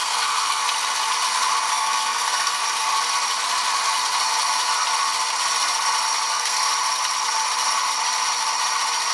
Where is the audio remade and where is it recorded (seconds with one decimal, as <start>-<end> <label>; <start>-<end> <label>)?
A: 0.0-0.6 remade; 0.6-1.7 recorded; 1.7-2.6 remade; 2.6-6.3 recorded; 6.3-6.7 remade; 6.7-9.1 recorded